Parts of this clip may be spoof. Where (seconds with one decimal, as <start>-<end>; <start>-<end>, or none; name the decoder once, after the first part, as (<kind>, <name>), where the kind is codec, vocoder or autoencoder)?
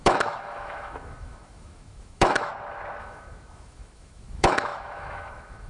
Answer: 0.0-2.5 (autoencoder, DAC-VAE); 3.0-5.7